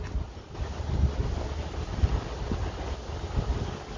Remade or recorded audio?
recorded